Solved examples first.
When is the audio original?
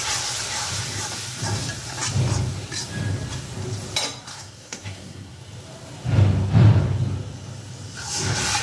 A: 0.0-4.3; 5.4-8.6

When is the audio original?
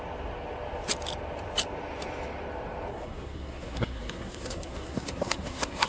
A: 0.0-2.9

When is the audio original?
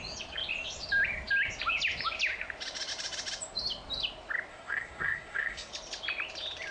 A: 0.0-4.5; 5.7-6.7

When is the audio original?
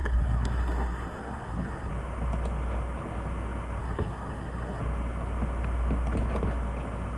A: 1.9-3.8; 4.8-7.2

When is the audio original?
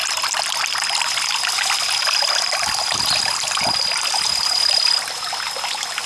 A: 0.0-6.1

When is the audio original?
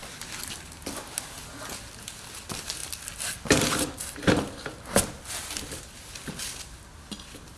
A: 0.0-7.6